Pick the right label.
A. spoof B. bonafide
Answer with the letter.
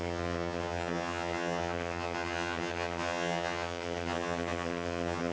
A